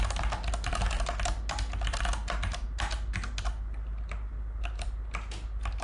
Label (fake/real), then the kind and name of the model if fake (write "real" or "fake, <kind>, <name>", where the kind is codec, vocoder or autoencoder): real